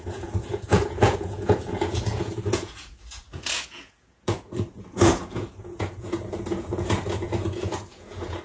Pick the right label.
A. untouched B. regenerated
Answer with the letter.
B